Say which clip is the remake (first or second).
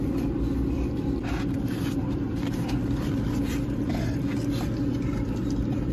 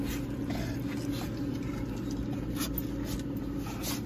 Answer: first